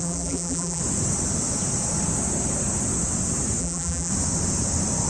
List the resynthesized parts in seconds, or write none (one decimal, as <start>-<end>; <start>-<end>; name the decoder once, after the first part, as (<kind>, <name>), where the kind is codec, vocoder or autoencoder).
0.0-0.8 (vocoder, BigVGAN v2); 3.6-4.1